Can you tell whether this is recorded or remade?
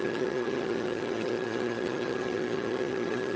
remade